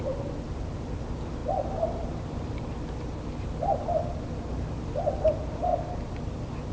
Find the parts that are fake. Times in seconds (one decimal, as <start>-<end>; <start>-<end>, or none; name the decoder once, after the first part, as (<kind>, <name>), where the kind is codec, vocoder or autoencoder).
none